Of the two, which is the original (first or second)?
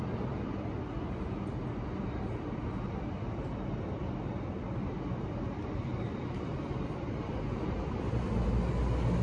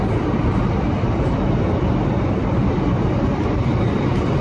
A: first